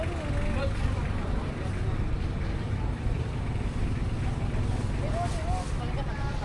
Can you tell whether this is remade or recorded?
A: recorded